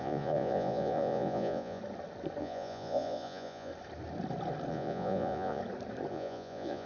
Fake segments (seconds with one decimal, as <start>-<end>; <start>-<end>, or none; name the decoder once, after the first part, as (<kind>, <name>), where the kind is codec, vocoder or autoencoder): 0.0-1.8 (vocoder, Vocos); 2.4-3.7; 4.7-5.6; 6.1-6.9